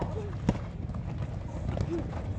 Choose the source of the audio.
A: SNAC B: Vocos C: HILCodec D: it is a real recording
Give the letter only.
D